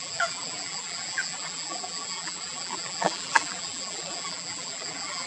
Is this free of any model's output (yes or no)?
no